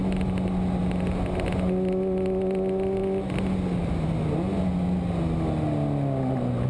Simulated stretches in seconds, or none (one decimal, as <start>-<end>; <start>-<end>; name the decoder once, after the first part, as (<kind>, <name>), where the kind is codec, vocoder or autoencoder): none

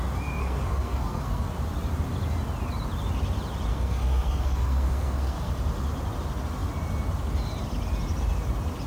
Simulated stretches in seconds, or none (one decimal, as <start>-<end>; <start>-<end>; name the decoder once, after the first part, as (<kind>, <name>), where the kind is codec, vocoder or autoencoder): 0.4-1.5 (codec, SNAC); 3.7-5.5

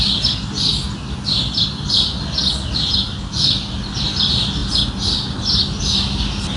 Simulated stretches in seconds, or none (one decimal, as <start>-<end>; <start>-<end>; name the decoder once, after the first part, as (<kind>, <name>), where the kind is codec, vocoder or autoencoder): none